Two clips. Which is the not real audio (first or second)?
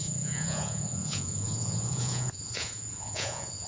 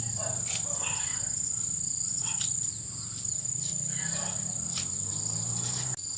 first